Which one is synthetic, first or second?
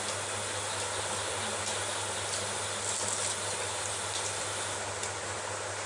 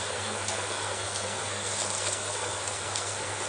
second